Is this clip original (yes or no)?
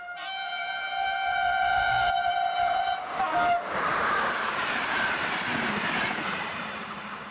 no